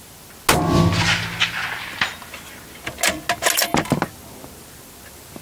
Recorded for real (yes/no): yes